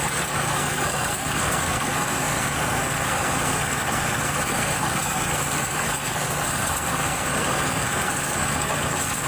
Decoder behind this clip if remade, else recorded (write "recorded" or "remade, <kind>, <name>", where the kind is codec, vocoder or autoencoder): remade, codec, SNAC